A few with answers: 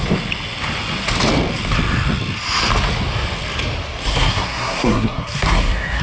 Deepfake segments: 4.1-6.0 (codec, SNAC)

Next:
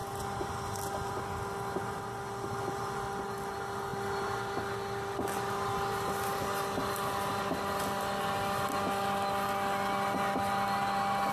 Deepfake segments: none